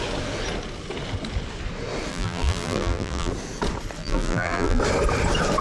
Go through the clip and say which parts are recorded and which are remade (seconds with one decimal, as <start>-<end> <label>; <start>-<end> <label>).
0.0-2.1 recorded; 2.1-3.3 remade; 3.3-4.0 recorded; 4.0-4.8 remade; 4.8-5.6 recorded